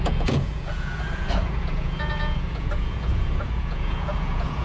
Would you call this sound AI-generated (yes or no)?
yes